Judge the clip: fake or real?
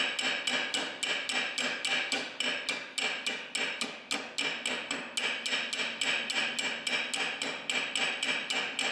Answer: real